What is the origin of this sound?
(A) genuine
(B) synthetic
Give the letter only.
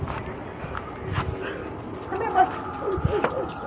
A